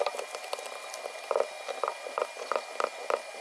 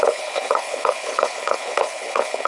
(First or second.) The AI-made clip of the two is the second